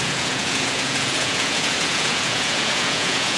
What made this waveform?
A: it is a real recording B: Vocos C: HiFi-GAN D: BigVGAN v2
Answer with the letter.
B